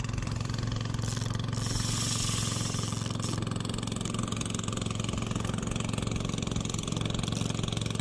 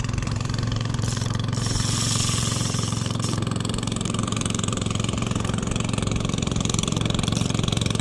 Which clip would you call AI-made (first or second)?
second